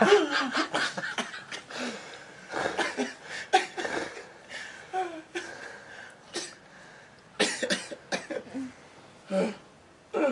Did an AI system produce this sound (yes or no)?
no